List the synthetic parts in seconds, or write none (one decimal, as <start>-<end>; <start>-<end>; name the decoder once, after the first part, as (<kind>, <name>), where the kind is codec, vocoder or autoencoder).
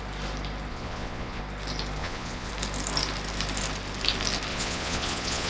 0.7-1.4 (vocoder, Vocos); 2.0-2.5; 4.5-5.5